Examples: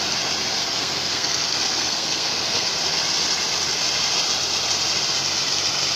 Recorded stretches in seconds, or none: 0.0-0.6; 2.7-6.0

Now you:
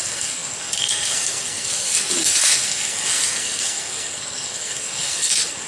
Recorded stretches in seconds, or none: none